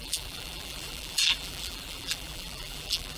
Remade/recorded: remade